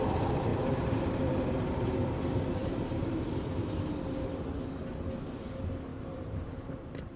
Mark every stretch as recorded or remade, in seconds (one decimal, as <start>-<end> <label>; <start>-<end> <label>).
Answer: 0.0-0.5 recorded; 0.5-2.2 remade; 2.2-2.6 recorded; 2.6-3.9 remade; 3.9-5.9 recorded; 5.9-7.2 remade